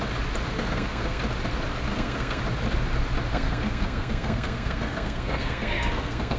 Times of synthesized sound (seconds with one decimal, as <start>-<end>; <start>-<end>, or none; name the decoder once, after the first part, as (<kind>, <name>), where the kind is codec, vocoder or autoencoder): 0.5-1.2 (codec, SNAC); 1.9-2.4; 3.3-6.4